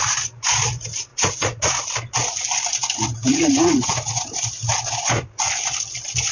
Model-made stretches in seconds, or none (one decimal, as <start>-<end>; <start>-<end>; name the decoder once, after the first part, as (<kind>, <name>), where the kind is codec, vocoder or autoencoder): 1.1-1.7 (vocoder, Vocos); 3.2-4.7